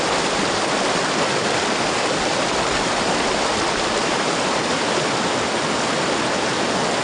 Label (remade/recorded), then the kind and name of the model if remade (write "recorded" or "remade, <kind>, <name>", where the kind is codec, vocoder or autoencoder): recorded